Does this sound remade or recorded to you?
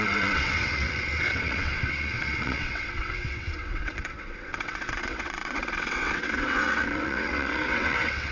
remade